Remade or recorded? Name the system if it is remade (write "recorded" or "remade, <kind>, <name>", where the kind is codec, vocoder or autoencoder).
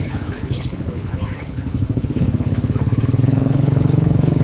remade, codec, HILCodec